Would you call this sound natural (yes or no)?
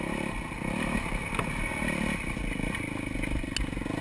yes